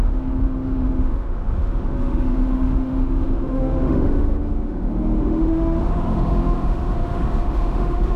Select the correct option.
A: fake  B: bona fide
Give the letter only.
A